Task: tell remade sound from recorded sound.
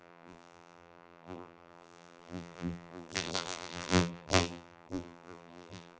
remade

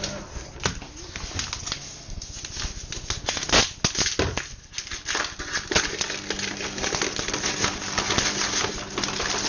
recorded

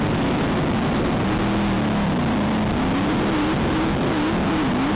recorded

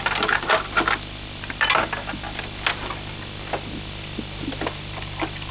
recorded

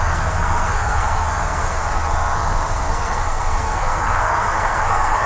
remade